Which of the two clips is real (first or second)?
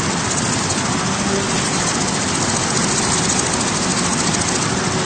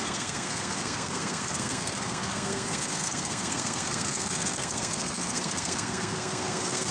first